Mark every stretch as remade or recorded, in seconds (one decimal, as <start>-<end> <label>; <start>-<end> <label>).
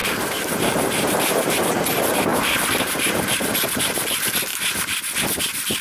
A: 0.0-1.8 remade; 1.8-2.3 recorded; 2.3-3.4 remade; 3.4-5.8 recorded